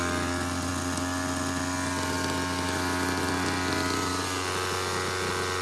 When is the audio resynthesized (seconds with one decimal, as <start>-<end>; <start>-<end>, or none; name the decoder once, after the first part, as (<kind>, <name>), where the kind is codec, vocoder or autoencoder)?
none